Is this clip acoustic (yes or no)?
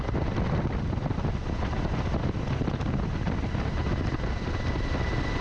yes